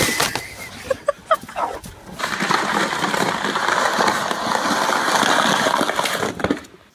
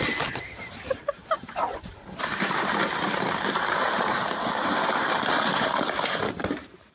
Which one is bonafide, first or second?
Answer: first